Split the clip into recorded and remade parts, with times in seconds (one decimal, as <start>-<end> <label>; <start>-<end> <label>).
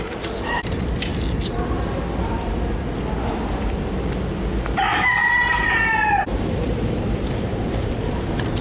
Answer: 0.0-1.1 remade; 1.1-5.2 recorded; 5.2-8.6 remade